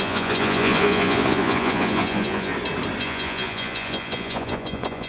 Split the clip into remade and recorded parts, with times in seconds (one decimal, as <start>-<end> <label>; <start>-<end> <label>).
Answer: 0.0-2.5 remade; 2.5-3.0 recorded; 3.0-5.1 remade